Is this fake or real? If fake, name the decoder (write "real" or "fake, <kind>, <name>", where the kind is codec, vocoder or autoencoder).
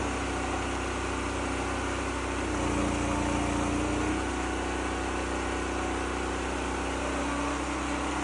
real